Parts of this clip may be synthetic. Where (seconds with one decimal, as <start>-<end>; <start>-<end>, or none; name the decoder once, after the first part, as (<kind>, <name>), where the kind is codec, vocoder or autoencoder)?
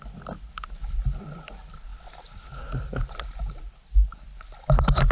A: none